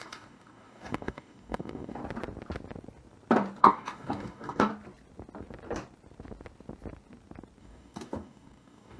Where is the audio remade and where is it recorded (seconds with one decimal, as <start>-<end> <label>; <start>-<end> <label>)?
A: 0.0-2.0 remade; 2.0-3.6 recorded; 3.6-4.7 remade; 4.7-7.6 recorded; 7.6-9.0 remade